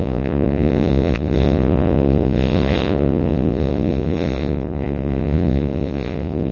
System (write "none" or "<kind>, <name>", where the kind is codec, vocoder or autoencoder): vocoder, Vocos